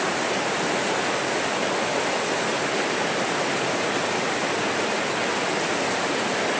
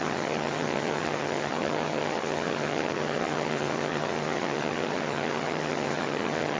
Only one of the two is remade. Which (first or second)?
second